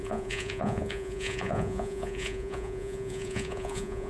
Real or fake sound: fake